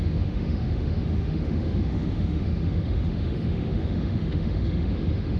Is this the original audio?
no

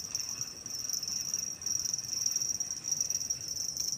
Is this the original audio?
yes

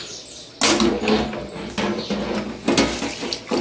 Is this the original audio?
yes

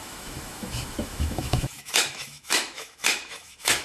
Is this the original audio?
no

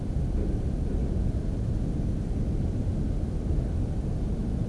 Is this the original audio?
yes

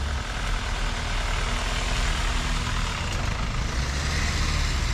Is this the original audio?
yes